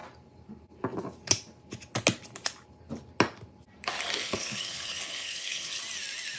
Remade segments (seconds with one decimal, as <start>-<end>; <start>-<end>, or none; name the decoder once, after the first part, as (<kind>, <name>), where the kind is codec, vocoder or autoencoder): 4.2-5.8 (codec, HILCodec)